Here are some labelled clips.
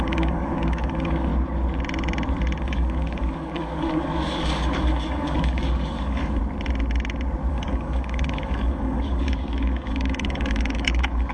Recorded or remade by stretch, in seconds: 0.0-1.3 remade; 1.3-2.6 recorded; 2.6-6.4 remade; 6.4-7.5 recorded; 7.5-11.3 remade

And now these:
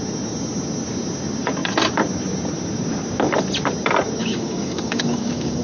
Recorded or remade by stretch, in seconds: 0.0-4.2 recorded; 4.2-5.6 remade

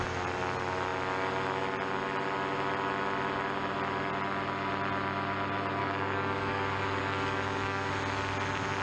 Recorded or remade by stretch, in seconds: 0.0-5.8 recorded; 5.8-7.9 remade; 7.9-8.8 recorded

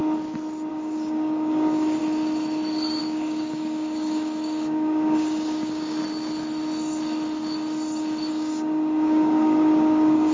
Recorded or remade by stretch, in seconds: 0.0-0.7 recorded; 0.7-2.0 remade; 2.0-3.0 recorded; 3.0-6.0 remade; 6.0-8.3 recorded; 8.3-10.3 remade

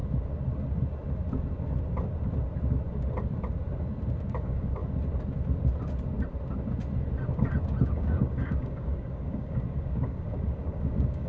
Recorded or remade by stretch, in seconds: 0.0-4.2 recorded; 4.2-4.8 remade; 4.8-7.8 recorded; 7.8-11.3 remade

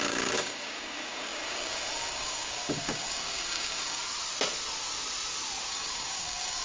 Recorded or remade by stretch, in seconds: 0.0-4.0 remade; 4.0-5.7 recorded; 5.7-6.6 remade